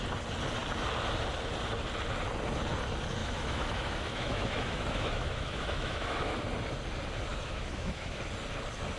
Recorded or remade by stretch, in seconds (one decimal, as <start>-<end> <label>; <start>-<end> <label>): 0.0-3.2 recorded; 3.2-6.4 remade; 6.4-7.3 recorded; 7.3-8.2 remade; 8.2-9.0 recorded